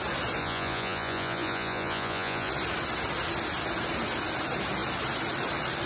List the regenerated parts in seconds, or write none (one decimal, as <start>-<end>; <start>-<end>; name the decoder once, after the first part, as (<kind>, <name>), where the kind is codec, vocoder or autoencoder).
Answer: 0.4-2.5 (vocoder, Vocos)